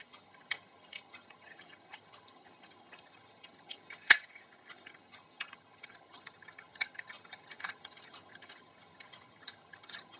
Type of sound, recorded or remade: remade